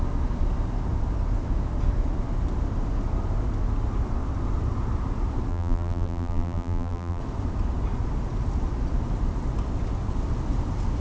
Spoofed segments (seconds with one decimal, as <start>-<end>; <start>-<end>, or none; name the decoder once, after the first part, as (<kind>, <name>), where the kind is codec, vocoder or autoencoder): 5.5-7.2 (vocoder, BigVGAN v2)